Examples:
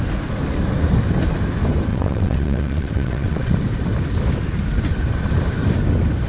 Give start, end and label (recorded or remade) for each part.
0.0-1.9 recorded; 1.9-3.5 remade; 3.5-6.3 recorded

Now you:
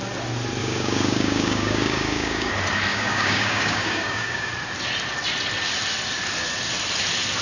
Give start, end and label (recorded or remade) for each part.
0.0-0.6 recorded; 0.6-2.5 remade; 2.5-2.9 recorded; 2.9-4.5 remade; 4.5-7.4 recorded

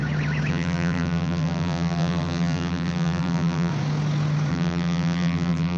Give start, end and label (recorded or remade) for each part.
0.0-0.5 recorded; 0.5-3.7 remade; 3.7-4.5 recorded; 4.5-5.8 remade